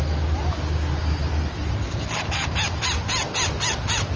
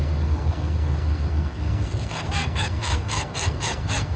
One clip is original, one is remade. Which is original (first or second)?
first